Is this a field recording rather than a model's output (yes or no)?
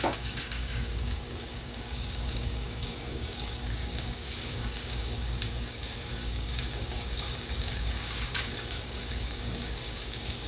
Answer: no